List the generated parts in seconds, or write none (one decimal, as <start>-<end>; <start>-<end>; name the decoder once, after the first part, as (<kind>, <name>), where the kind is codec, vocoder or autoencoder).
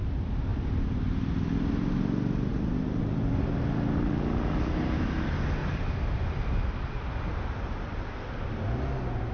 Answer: 0.5-1.7 (vocoder, BigVGAN v2); 2.5-3.0; 5.6-6.6